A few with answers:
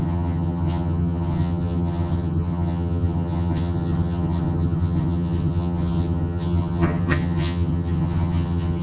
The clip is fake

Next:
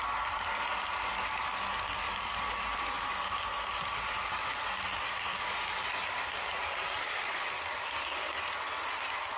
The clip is real